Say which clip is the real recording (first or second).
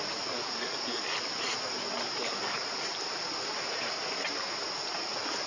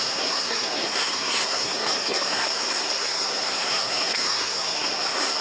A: first